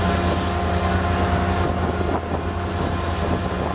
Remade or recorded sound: recorded